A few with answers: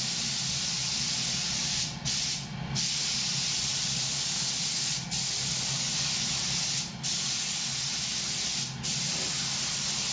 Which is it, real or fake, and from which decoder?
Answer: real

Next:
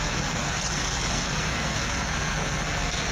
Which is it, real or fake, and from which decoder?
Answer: fake, codec, SNAC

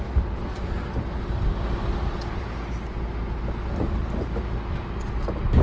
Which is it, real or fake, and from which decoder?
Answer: real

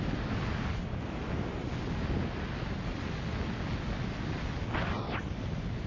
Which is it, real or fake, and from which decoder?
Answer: real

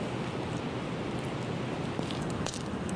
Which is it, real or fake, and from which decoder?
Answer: real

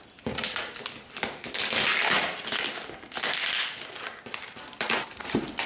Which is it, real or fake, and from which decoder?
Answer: real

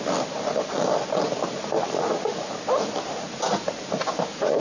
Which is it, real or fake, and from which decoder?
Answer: real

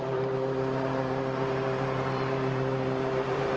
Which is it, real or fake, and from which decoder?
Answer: fake, vocoder, BigVGAN v2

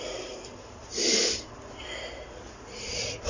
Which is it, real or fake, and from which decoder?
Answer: real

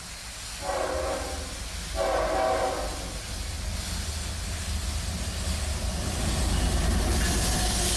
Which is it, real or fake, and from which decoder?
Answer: real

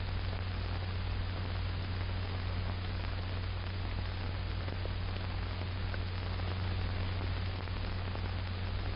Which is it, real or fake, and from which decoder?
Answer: real